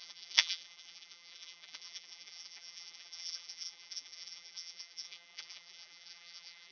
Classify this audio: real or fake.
fake